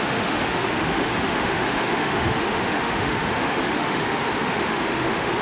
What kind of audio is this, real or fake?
fake